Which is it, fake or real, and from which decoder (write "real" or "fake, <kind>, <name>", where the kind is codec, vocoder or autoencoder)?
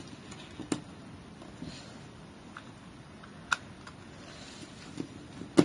real